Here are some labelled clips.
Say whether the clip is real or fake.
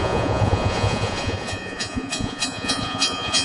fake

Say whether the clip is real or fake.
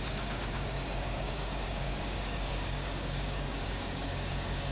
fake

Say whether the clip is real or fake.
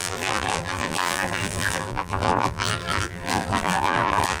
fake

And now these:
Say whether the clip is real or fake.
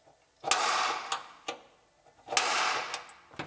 real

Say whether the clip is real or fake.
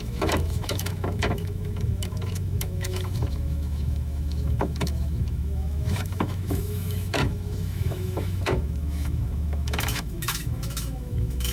fake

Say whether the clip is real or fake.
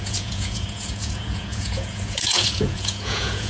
fake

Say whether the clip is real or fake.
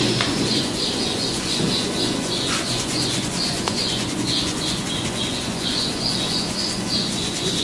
fake